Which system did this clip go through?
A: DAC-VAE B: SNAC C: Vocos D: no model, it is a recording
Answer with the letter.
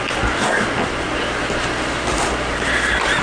D